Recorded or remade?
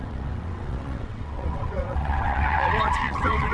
remade